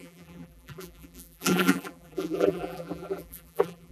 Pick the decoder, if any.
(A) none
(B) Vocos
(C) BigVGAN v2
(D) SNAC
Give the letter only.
C